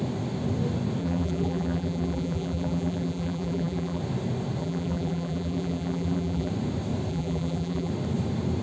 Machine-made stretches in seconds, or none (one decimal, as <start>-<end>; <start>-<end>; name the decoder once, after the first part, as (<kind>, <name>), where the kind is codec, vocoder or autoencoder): 1.0-4.0 (vocoder, BigVGAN v2); 4.6-6.5; 7.1-7.9